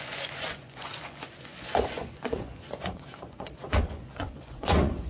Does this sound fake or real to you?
fake